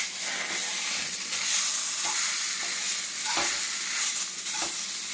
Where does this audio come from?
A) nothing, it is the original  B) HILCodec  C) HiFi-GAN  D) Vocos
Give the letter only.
A